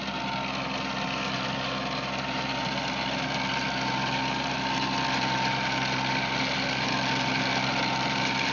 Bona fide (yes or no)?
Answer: yes